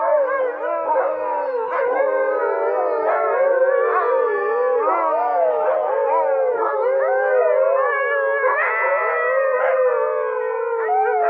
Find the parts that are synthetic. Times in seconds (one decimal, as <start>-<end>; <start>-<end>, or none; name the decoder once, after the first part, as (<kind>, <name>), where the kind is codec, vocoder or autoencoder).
none